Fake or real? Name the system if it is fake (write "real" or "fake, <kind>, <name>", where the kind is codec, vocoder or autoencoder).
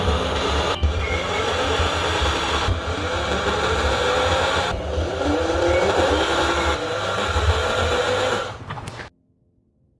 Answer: real